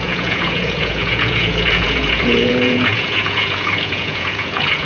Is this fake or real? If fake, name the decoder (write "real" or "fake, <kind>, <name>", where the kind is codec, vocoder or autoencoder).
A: fake, vocoder, Vocos